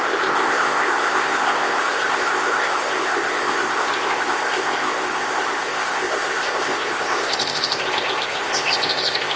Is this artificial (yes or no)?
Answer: yes